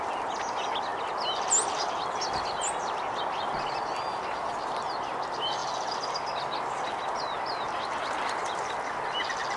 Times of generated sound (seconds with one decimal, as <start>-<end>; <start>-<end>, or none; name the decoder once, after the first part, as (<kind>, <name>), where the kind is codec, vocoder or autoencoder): none